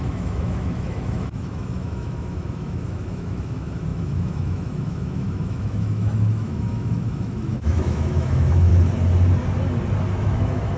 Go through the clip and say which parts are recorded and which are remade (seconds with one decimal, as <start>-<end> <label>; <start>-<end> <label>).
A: 0.0-8.7 remade; 8.7-10.1 recorded; 10.1-10.8 remade